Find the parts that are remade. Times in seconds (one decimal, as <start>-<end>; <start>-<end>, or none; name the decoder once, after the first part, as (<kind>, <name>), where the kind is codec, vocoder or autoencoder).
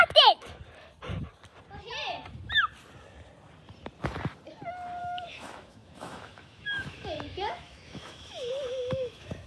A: 0.0-0.6 (autoencoder, DAC-VAE); 5.0-9.5